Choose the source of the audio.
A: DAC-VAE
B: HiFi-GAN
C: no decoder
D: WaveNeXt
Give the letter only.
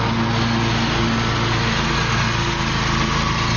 C